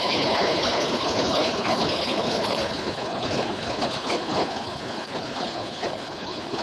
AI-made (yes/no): yes